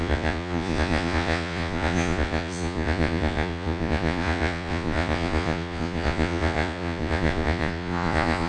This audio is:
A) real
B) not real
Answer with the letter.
B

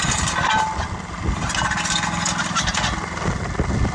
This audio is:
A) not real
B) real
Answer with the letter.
B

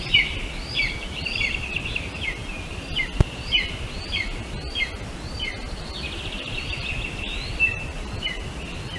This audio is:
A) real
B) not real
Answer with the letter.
A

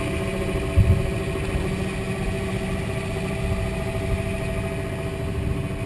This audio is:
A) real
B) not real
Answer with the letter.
A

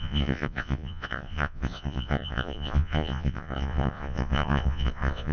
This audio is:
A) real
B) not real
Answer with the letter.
B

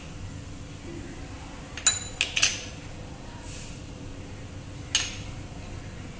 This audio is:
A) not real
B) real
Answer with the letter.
B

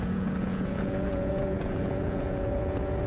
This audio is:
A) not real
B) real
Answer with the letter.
A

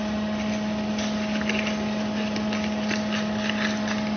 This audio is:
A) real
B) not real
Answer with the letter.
A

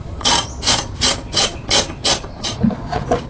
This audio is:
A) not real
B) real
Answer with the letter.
A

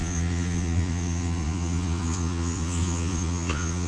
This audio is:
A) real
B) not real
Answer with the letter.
B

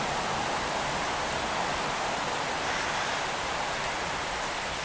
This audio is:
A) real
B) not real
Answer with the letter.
A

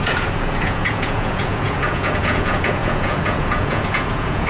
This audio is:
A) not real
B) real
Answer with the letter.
A